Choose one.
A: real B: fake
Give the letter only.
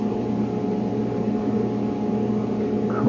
A